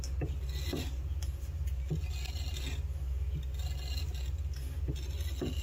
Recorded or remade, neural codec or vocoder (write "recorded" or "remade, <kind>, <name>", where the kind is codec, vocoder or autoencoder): recorded